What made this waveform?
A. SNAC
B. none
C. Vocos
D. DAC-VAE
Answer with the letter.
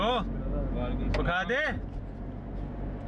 B